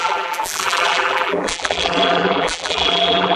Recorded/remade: remade